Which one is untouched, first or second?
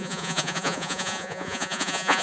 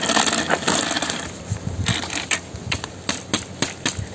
second